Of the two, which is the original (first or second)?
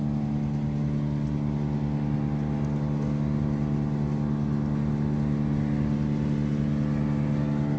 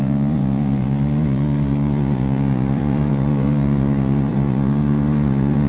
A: first